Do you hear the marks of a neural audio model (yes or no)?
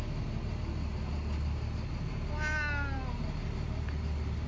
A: no